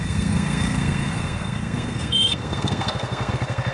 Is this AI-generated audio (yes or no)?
yes